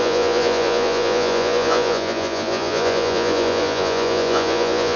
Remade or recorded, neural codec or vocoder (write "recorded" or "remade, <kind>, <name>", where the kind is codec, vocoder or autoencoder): remade, vocoder, Vocos